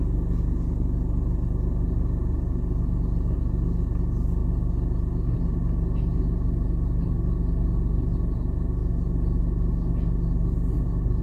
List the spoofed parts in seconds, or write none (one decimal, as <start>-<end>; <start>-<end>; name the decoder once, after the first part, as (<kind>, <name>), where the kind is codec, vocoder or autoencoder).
none